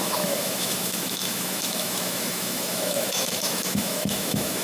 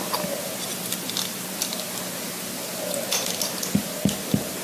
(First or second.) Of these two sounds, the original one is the second